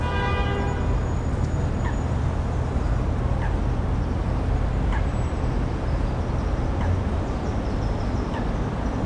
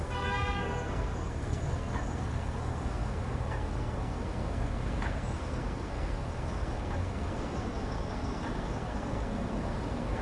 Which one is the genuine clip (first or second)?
first